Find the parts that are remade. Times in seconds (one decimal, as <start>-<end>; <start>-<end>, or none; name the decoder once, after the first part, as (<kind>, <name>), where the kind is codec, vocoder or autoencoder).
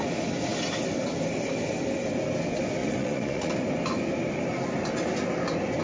2.8-3.5 (vocoder, Vocos)